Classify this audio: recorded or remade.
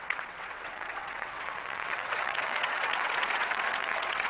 remade